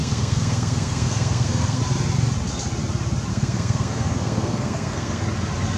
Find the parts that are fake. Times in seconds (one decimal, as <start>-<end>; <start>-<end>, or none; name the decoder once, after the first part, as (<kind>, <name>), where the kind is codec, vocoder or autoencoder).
0.0-1.8 (codec, SNAC); 3.3-5.2